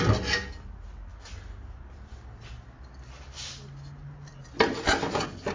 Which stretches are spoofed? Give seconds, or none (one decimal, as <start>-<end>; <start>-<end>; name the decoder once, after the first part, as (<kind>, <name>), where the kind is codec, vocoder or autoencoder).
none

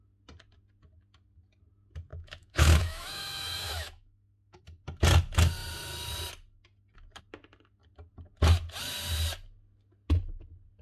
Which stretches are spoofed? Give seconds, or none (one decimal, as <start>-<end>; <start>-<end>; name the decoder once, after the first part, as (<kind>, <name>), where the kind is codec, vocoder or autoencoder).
2.1-4.6 (autoencoder, DAC-VAE)

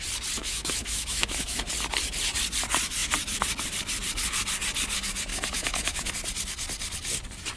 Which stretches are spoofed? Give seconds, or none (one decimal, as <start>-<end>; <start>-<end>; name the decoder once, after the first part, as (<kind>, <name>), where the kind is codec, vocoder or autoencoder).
0.4-1.6 (autoencoder, DAC-VAE); 5.3-6.1

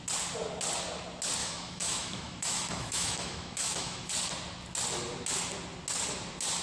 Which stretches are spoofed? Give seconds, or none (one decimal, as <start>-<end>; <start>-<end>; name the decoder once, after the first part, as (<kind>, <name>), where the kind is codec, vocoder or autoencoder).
1.4-4.1 (autoencoder, DAC-VAE)

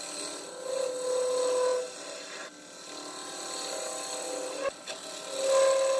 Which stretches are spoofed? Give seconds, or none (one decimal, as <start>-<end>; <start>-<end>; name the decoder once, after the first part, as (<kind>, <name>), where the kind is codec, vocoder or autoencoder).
none

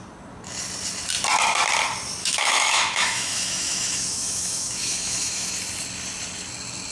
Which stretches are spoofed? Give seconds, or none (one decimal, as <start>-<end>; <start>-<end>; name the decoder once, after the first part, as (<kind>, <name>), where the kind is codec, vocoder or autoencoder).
2.2-5.5 (autoencoder, DAC-VAE)

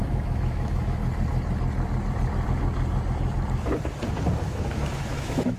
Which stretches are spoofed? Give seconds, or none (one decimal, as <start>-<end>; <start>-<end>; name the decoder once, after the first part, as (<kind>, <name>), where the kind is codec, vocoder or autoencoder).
0.0-1.0 (autoencoder, DAC-VAE); 4.4-5.6

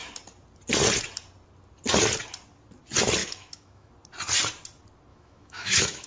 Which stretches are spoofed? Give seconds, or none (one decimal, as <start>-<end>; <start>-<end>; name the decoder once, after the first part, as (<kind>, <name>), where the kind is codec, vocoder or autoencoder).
3.2-3.9 (autoencoder, DAC-VAE); 5.1-6.1